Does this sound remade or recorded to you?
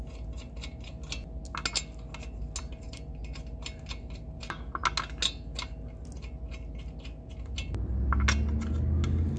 recorded